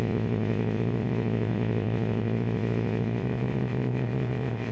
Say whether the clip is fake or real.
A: fake